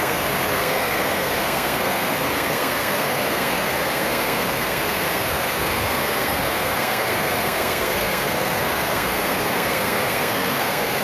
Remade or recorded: remade